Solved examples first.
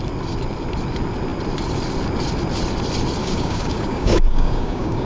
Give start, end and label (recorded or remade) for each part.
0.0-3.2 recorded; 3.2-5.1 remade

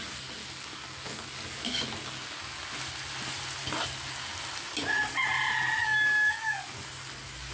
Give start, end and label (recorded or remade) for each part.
0.0-0.4 recorded; 0.4-2.7 remade; 2.7-5.8 recorded; 5.8-6.8 remade; 6.8-7.5 recorded

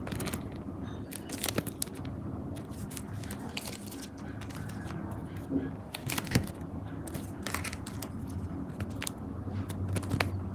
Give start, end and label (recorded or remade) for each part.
0.0-5.8 recorded; 5.8-6.5 remade; 6.5-10.5 recorded

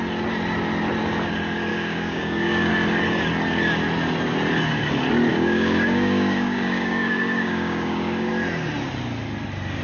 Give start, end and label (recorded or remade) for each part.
0.0-1.7 recorded; 1.7-2.7 remade; 2.7-5.3 recorded; 5.3-8.3 remade; 8.3-9.8 recorded